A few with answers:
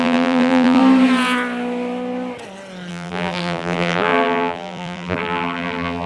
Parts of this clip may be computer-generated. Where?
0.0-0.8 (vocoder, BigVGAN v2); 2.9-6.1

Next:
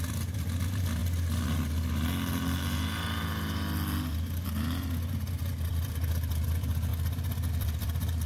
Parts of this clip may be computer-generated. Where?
0.0-1.0 (vocoder, BigVGAN v2); 5.7-6.9; 7.5-8.3

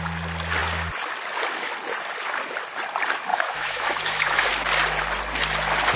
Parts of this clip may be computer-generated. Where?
3.3-4.5 (autoencoder, DAC-VAE)

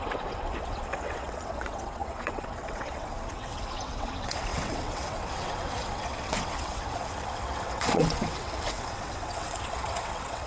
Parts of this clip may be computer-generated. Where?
0.0-10.5 (vocoder, WaveNeXt)

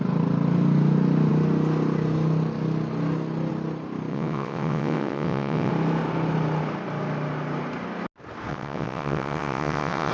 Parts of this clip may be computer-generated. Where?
4.1-5.7 (vocoder, WaveNeXt); 8.5-10.1

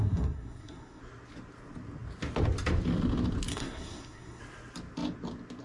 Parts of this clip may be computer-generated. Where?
0.0-1.0 (codec, SNAC); 3.5-4.4

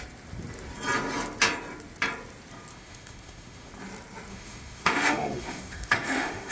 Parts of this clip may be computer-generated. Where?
2.7-3.7 (autoencoder, DAC-VAE); 4.3-6.5